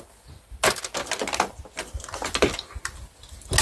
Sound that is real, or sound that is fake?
real